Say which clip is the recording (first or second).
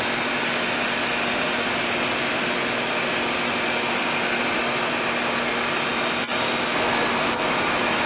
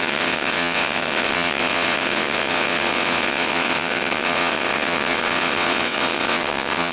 first